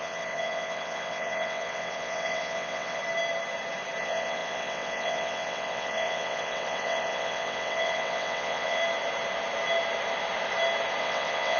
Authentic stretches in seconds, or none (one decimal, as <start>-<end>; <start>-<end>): 3.0-4.0; 8.8-11.0